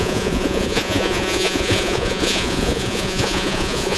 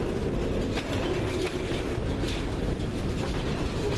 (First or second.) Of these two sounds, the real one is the second